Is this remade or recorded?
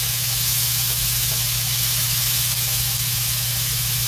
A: remade